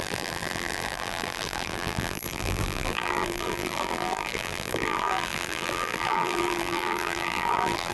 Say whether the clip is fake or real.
fake